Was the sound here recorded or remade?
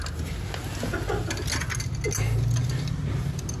recorded